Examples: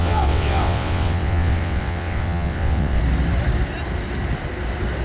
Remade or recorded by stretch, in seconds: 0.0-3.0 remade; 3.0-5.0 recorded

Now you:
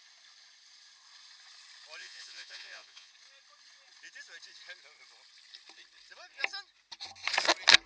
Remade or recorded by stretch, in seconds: 0.0-2.0 recorded; 2.0-3.1 remade; 3.1-7.9 recorded

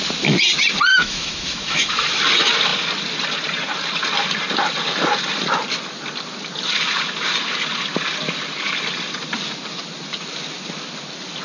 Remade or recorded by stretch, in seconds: 0.0-0.9 recorded; 0.9-2.2 remade; 2.2-11.4 recorded